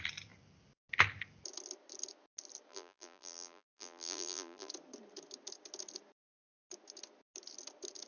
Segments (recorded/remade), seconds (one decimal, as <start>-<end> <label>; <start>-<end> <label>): 0.0-2.7 recorded; 2.7-4.7 remade; 4.7-8.1 recorded

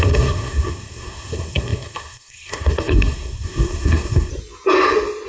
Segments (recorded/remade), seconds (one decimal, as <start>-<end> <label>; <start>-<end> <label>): 0.0-4.3 remade; 4.3-5.3 recorded